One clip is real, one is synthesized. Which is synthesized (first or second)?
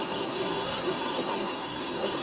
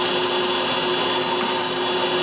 first